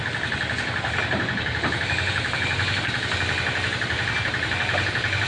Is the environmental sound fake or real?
real